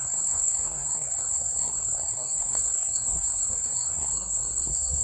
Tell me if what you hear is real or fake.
fake